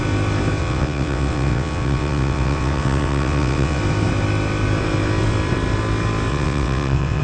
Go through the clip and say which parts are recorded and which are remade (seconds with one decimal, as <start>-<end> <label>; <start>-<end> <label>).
0.0-0.6 recorded; 0.6-3.8 remade; 3.8-6.3 recorded; 6.3-7.2 remade